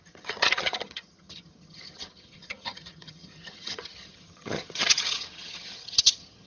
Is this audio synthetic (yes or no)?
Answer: yes